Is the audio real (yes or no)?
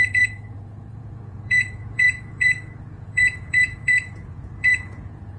no